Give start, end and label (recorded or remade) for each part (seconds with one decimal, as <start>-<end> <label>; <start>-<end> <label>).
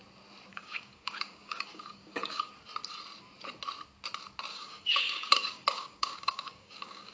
0.0-0.5 recorded; 0.5-2.5 remade; 2.5-4.5 recorded; 4.5-7.1 remade